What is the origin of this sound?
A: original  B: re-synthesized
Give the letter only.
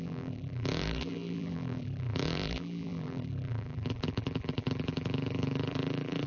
B